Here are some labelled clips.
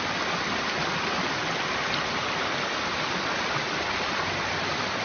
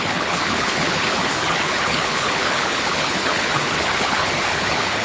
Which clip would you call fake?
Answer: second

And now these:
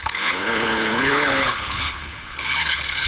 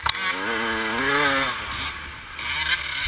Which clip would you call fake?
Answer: first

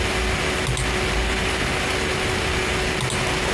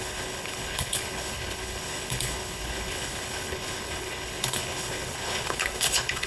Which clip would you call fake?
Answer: second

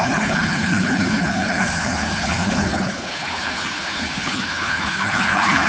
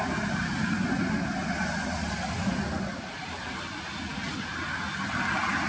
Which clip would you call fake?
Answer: first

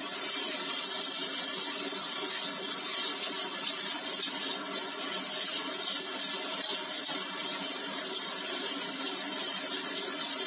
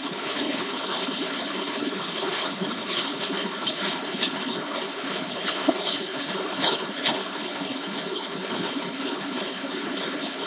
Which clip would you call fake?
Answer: second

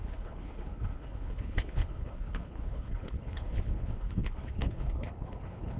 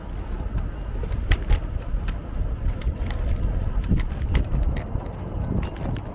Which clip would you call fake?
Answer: first